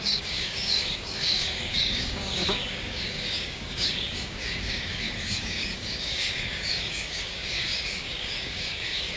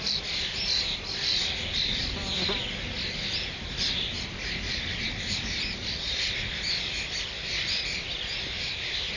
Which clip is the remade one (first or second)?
first